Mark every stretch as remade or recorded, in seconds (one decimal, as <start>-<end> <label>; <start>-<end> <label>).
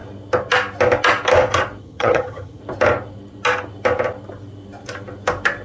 0.0-1.8 recorded; 1.8-2.6 remade; 2.6-5.6 recorded